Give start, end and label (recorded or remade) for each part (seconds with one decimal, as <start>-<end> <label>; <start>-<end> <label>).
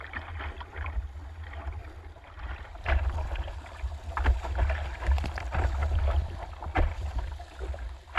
0.0-1.8 recorded; 1.8-3.5 remade; 3.5-8.2 recorded